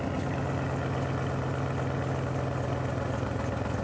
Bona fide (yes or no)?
yes